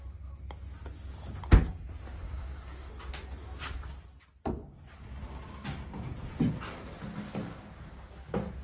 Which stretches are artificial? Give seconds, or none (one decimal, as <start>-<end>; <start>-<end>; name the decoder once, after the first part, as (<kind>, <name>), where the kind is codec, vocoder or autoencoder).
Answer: 2.2-2.9 (codec, SNAC)